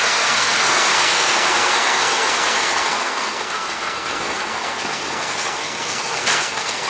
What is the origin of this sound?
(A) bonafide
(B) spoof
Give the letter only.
B